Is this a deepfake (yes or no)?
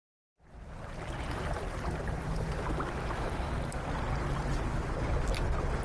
no